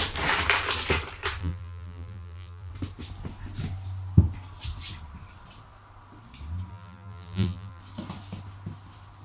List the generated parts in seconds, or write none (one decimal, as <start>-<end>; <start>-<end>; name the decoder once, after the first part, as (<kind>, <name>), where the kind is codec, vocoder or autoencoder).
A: 1.4-2.7 (vocoder, BigVGAN v2); 6.7-7.8